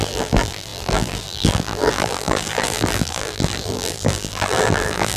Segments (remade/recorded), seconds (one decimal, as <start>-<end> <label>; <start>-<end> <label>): 0.0-5.2 remade